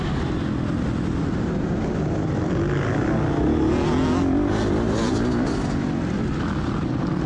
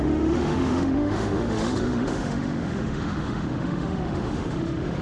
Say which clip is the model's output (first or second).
second